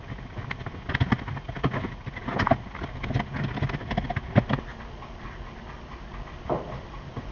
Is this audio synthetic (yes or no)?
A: no